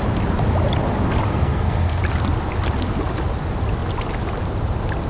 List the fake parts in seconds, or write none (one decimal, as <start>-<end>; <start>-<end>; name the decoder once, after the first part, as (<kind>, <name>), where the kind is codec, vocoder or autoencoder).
1.3-2.0 (codec, SNAC)